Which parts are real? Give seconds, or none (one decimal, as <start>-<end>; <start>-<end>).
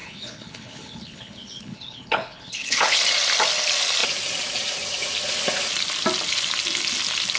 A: 3.0-7.4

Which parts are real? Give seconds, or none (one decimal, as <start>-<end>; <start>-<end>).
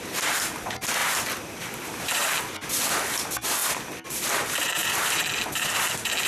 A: 0.0-1.0; 2.0-3.6; 4.3-4.8; 5.4-6.3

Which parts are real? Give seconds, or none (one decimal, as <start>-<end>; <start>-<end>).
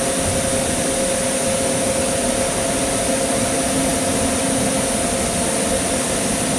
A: 0.0-6.6